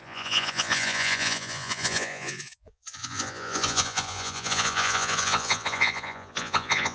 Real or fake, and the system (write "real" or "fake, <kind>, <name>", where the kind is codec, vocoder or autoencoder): fake, vocoder, Vocos